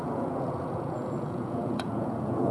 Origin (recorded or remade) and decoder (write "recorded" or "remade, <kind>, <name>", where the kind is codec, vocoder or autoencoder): remade, vocoder, Vocos